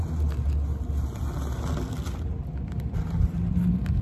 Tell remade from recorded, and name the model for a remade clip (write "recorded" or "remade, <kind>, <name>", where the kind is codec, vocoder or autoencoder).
recorded